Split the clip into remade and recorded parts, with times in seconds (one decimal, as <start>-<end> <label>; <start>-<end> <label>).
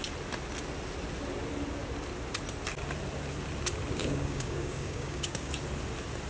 0.0-4.0 recorded; 4.0-5.5 remade; 5.5-6.3 recorded